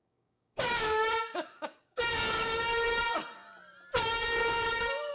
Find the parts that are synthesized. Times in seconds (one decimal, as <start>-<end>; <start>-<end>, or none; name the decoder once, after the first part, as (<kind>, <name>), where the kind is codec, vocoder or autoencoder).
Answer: 0.0-3.2 (codec, DAC); 4.0-5.1